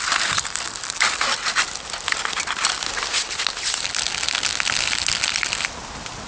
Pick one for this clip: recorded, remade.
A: recorded